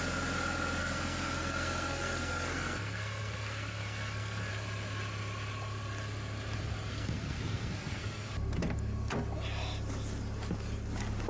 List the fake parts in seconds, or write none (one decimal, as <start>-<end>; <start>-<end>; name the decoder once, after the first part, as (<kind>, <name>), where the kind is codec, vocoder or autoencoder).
0.8-4.5 (codec, SNAC); 6.9-8.3